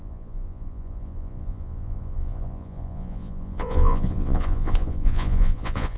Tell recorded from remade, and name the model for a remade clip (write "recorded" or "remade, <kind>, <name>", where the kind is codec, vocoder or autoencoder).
remade, vocoder, Vocos